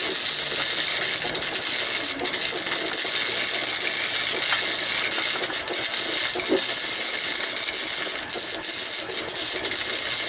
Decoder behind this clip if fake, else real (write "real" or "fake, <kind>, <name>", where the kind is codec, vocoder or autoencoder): real